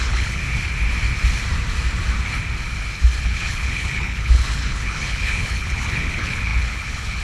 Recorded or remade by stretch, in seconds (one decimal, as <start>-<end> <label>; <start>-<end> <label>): 0.0-0.4 remade; 0.4-3.2 recorded; 3.2-7.2 remade